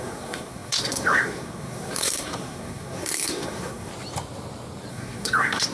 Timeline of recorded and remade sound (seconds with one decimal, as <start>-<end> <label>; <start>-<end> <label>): 0.0-3.9 remade; 3.9-4.9 recorded; 4.9-5.7 remade